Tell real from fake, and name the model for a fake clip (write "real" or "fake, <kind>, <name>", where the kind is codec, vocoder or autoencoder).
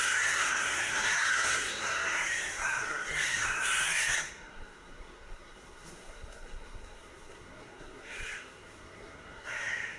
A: fake, codec, SNAC